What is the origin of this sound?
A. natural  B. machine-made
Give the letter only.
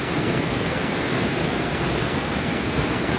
B